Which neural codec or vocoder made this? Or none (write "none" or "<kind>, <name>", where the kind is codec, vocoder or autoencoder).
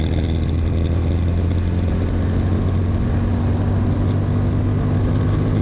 none